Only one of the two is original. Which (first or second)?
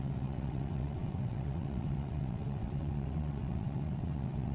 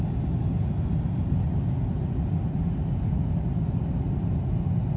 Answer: second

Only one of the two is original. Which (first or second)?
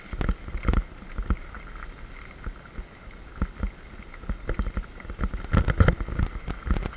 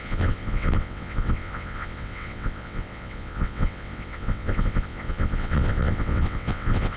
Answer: first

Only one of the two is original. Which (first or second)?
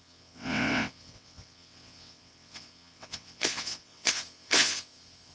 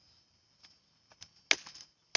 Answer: second